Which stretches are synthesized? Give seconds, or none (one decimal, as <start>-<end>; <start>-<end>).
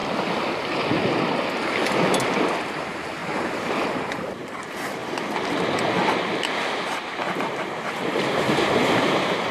2.6-5.0; 6.8-9.5